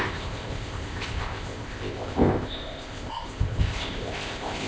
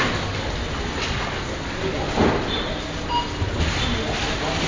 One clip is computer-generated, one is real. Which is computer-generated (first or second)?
first